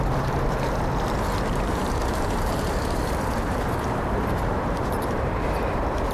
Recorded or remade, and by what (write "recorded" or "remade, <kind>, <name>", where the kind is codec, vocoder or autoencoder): remade, vocoder, BigVGAN v2